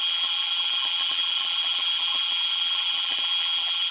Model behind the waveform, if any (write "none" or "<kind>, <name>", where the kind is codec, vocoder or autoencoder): vocoder, BigVGAN v2